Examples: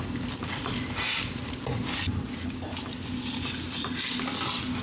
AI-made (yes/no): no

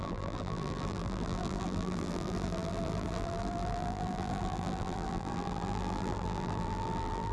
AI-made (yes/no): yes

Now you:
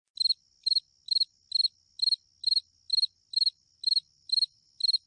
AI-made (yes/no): no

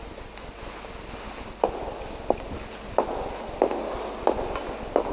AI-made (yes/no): no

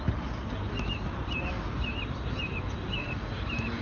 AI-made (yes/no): yes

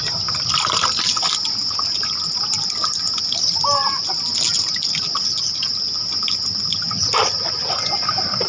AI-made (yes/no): no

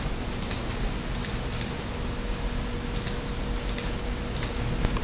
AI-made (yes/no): no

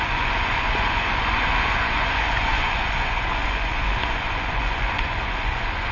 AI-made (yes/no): yes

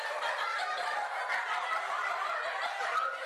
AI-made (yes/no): no